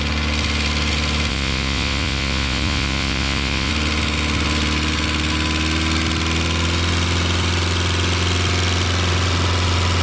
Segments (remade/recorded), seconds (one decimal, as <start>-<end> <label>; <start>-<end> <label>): 0.0-1.3 recorded; 1.3-3.7 remade; 3.7-10.0 recorded